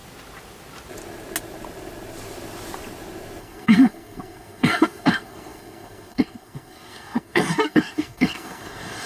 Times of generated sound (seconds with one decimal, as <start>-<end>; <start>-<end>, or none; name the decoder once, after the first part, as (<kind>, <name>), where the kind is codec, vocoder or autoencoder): 3.4-9.1 (codec, SNAC)